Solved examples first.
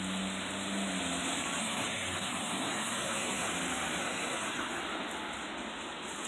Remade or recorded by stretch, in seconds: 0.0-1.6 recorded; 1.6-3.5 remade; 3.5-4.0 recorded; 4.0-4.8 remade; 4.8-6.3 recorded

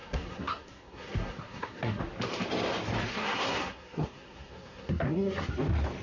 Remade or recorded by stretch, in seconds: 0.0-2.0 remade; 2.0-3.1 recorded; 3.1-5.5 remade; 5.5-6.0 recorded

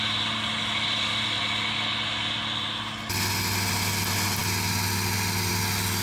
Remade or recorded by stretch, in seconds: 0.0-6.0 recorded